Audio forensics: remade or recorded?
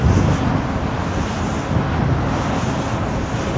recorded